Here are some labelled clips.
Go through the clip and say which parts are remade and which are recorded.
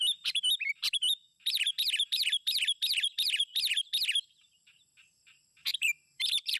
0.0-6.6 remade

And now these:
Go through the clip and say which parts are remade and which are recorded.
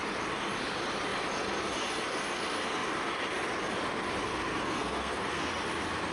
0.0-4.6 recorded; 4.6-5.5 remade; 5.5-6.1 recorded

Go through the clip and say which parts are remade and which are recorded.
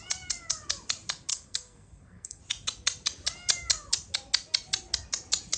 0.0-1.3 recorded; 1.3-2.4 remade; 2.4-5.6 recorded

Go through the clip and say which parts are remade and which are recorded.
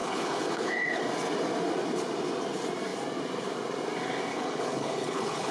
0.0-1.0 remade; 1.0-4.3 recorded; 4.3-5.5 remade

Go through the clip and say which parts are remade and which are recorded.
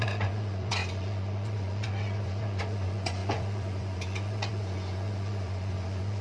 0.0-6.2 remade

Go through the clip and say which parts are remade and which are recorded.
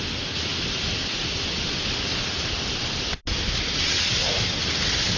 0.0-5.2 recorded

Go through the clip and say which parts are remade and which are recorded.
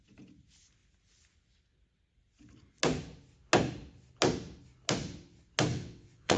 0.0-5.7 recorded; 5.7-6.4 remade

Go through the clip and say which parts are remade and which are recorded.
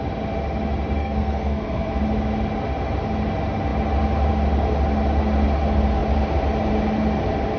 0.0-1.0 recorded; 1.0-2.0 remade; 2.0-7.6 recorded